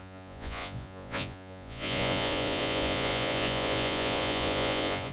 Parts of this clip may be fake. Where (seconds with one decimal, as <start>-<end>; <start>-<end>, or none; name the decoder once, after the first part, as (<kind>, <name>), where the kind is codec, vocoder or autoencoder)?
0.0-5.1 (vocoder, Vocos)